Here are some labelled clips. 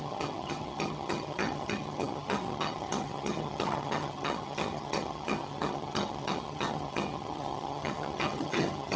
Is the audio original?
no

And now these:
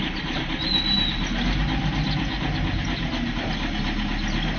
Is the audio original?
yes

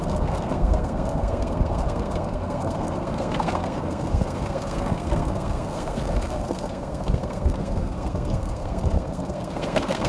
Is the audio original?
no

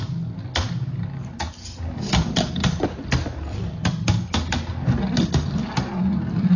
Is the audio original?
yes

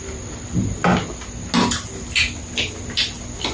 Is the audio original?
yes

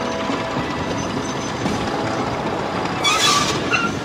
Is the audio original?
yes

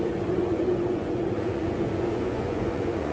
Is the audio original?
no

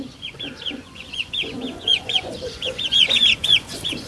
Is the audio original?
no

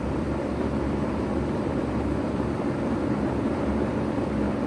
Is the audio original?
no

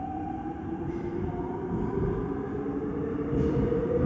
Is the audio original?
yes